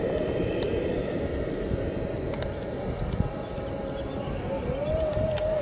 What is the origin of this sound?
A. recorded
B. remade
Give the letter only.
A